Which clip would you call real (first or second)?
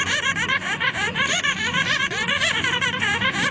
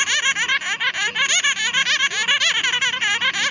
second